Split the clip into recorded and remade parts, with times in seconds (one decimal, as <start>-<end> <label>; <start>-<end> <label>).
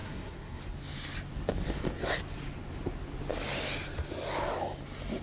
0.0-0.6 remade; 0.6-5.2 recorded